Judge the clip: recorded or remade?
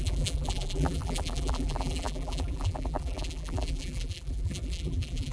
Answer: remade